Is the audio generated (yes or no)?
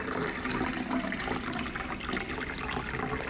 no